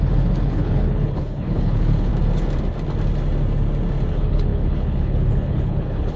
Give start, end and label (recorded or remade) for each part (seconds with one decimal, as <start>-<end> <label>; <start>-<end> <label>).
0.0-2.1 remade; 2.1-4.1 recorded; 4.1-6.2 remade